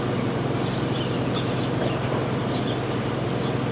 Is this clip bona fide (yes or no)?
yes